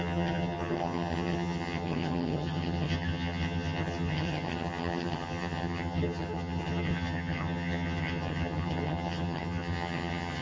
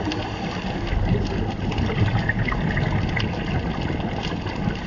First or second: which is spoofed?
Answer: first